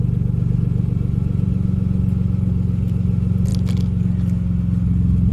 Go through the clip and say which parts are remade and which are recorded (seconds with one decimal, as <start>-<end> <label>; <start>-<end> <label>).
0.0-5.3 recorded